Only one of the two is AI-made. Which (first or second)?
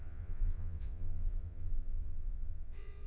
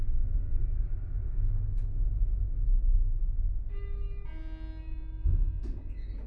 first